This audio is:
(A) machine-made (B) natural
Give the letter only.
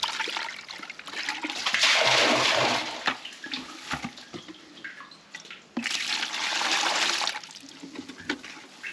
B